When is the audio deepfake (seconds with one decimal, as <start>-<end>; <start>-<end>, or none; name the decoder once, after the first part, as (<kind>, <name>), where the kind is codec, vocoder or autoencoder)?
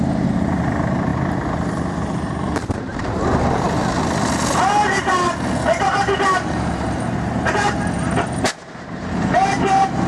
0.0-3.8 (vocoder, BigVGAN v2); 5.8-10.1